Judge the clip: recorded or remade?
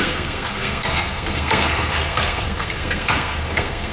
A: remade